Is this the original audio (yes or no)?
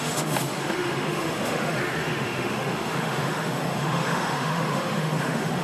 no